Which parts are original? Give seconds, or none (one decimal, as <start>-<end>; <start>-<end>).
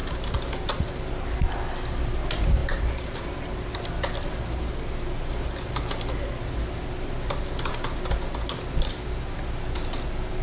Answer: 0.0-10.4